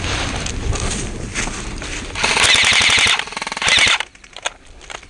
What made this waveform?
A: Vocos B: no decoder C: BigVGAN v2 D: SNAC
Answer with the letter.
B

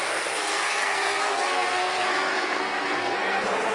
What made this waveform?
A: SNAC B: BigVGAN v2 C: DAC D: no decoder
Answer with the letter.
A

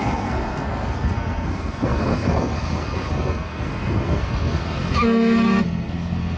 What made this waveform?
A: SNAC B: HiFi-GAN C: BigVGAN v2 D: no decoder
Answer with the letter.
A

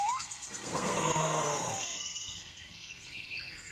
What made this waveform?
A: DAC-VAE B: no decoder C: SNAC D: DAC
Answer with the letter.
C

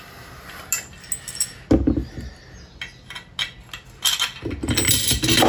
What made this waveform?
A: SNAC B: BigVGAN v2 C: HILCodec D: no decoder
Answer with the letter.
D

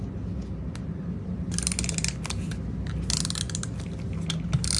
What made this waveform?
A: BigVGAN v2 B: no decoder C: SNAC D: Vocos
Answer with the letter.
B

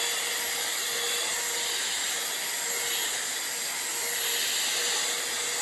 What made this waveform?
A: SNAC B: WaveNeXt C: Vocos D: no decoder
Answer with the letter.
D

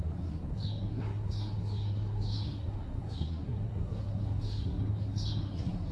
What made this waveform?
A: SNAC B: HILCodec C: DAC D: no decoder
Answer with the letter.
A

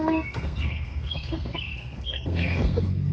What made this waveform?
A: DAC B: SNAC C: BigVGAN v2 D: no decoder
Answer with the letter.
B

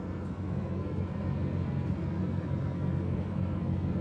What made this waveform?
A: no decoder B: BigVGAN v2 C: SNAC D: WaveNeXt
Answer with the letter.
C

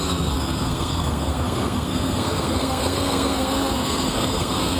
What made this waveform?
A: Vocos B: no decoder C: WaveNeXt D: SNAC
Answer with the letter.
D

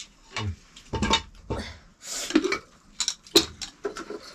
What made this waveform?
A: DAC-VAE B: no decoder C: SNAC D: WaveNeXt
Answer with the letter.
B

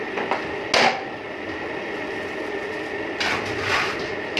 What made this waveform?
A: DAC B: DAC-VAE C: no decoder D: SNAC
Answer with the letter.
C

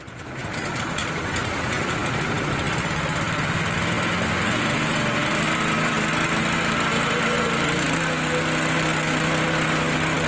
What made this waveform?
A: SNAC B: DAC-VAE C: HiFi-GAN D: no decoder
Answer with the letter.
D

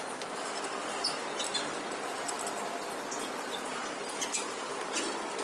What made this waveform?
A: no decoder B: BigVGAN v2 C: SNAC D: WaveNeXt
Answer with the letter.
A